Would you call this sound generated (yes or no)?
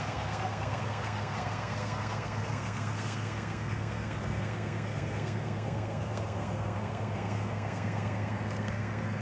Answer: yes